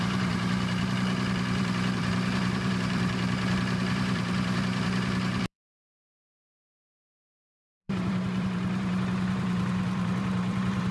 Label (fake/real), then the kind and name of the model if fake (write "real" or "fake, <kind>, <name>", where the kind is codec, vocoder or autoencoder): fake, vocoder, BigVGAN v2